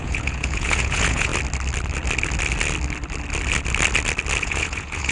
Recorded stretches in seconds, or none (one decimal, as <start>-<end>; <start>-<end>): 1.3-4.4